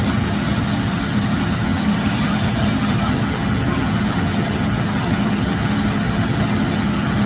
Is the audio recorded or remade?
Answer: remade